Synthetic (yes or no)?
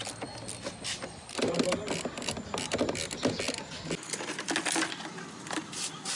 no